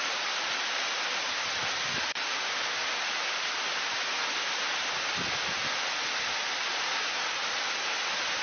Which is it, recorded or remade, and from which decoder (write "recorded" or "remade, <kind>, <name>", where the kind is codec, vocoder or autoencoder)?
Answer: recorded